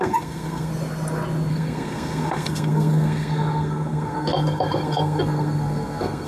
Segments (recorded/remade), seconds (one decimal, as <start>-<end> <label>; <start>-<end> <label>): 0.0-0.7 remade; 0.7-1.5 recorded; 1.5-6.3 remade